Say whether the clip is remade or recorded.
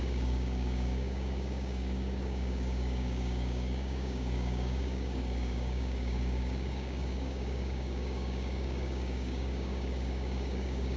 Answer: remade